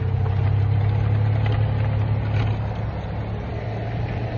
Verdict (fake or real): real